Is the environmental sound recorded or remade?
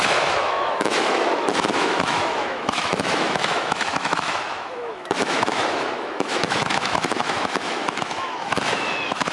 remade